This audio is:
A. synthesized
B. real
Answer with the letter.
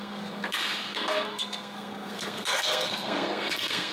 A